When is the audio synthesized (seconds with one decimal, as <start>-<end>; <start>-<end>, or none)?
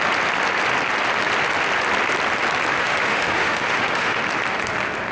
2.8-4.2